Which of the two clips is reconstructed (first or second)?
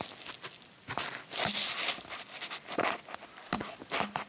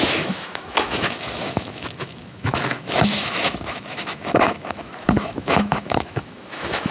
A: second